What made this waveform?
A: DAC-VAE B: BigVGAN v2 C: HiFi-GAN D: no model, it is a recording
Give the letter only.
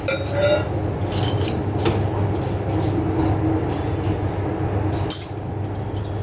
D